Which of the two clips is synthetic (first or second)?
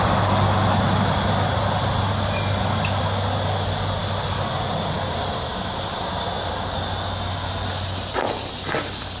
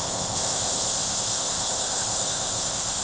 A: second